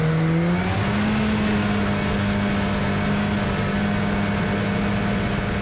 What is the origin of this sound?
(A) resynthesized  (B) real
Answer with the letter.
B